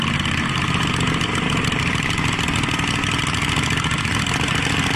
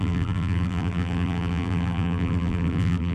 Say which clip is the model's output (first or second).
second